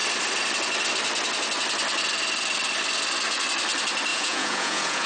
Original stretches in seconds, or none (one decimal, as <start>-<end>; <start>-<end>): 0.0-4.1